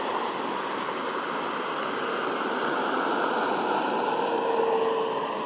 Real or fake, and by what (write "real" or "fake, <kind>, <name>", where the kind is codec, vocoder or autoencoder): real